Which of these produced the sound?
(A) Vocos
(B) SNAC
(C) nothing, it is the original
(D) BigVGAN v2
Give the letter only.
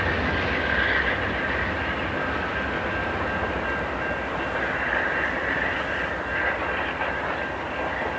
C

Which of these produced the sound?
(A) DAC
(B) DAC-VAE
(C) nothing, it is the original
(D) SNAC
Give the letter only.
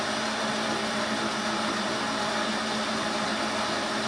C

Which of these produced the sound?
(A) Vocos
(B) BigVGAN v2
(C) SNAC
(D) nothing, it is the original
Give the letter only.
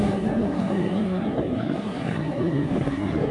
C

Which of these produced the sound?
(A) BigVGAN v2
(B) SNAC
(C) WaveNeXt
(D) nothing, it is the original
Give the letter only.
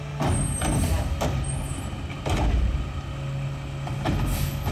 D